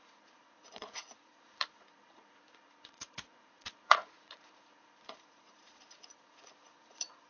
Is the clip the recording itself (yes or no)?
no